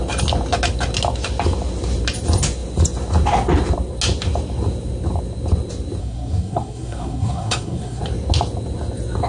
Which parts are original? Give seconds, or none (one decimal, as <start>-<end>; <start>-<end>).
0.0-6.0; 8.0-9.3